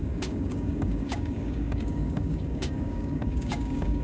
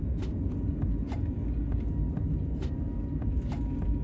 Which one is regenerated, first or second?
first